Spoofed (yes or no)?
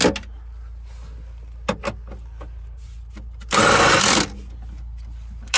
no